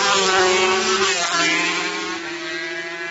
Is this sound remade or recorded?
recorded